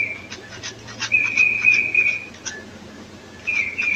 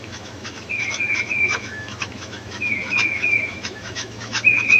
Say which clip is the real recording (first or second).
first